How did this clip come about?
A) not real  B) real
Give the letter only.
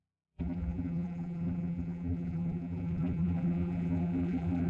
A